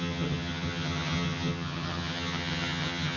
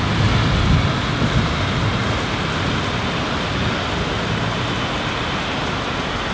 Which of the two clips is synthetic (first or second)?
first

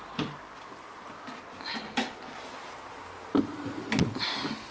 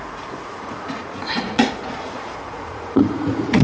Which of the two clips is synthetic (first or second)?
second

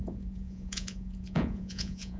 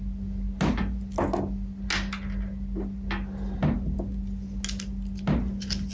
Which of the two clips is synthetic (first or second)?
first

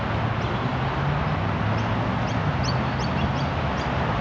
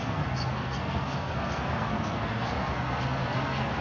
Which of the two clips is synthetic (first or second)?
second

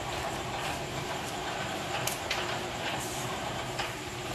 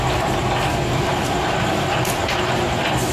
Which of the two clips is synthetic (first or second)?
first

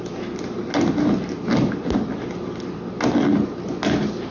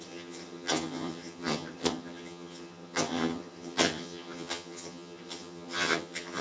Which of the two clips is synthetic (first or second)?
second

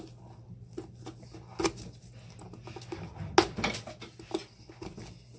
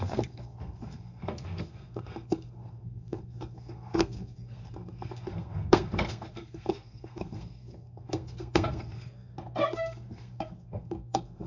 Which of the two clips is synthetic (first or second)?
second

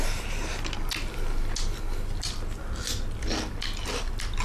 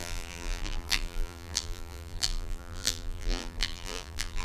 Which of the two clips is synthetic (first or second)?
second